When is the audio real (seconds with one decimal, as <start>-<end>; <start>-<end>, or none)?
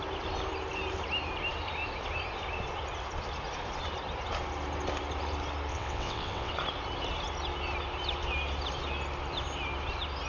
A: 0.0-5.7; 6.5-10.3